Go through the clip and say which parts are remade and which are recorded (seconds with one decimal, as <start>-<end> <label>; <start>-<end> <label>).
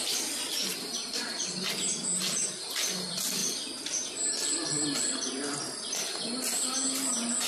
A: 0.0-7.5 recorded